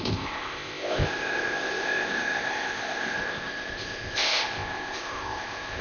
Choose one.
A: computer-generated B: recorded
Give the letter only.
A